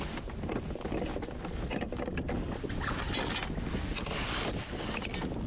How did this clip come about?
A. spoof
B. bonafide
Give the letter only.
B